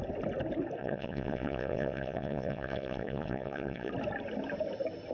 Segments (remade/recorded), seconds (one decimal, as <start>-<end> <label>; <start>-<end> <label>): 0.0-0.8 recorded; 0.8-3.9 remade; 3.9-5.1 recorded